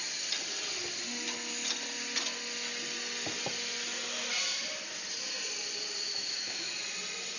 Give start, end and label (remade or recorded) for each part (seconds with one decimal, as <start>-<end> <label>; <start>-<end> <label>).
0.0-6.1 recorded; 6.1-6.7 remade; 6.7-7.4 recorded